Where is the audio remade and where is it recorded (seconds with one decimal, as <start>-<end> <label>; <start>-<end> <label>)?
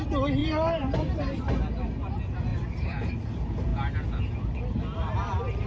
0.0-0.4 recorded; 0.4-1.4 remade; 1.4-2.5 recorded; 2.5-3.1 remade; 3.1-5.7 recorded